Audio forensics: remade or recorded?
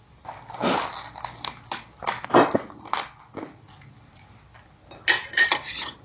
recorded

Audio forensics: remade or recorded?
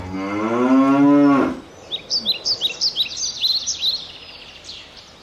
recorded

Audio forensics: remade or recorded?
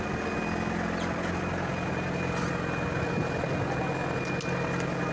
recorded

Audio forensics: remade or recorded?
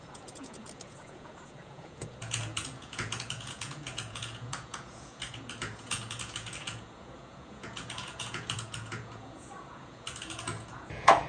remade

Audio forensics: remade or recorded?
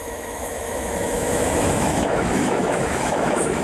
remade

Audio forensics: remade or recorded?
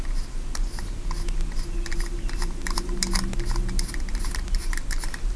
recorded